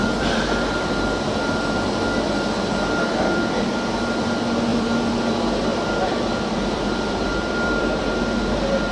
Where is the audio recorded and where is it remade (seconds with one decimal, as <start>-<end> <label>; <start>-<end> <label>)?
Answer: 0.0-0.7 remade; 0.7-4.7 recorded; 4.7-5.3 remade; 5.3-5.7 recorded; 5.7-8.0 remade; 8.0-8.9 recorded